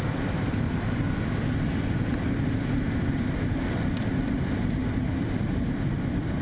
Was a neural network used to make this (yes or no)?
no